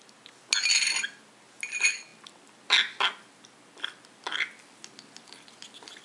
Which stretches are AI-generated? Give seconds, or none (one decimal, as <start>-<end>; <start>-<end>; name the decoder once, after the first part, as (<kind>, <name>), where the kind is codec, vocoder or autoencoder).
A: none